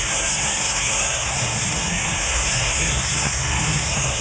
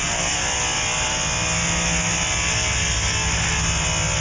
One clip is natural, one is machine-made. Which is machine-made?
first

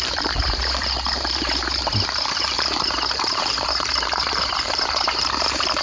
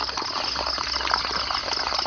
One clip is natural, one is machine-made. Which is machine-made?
first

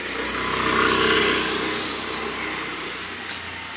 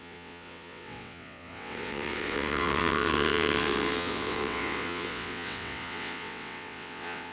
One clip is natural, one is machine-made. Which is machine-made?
second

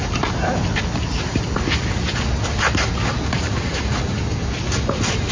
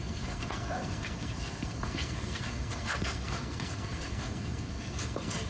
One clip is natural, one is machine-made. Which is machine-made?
second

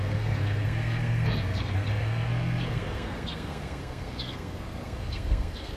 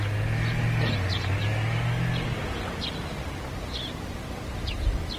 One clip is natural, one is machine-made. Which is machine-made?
first